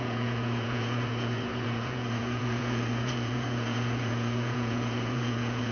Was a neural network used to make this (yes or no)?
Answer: yes